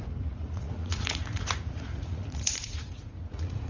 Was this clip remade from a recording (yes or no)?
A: yes